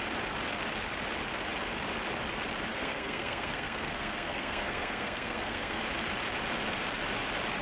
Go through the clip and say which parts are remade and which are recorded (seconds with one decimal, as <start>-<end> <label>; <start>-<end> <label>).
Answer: 0.0-2.7 recorded; 2.7-5.8 remade; 5.8-7.6 recorded

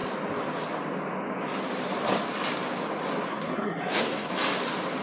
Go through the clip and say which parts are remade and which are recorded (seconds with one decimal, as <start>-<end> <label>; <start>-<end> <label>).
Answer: 0.0-3.3 recorded; 3.3-4.3 remade; 4.3-5.0 recorded

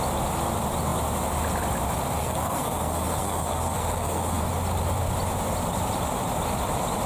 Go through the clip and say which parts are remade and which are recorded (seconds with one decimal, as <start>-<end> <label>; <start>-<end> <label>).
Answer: 0.0-2.2 recorded; 2.2-4.4 remade; 4.4-7.1 recorded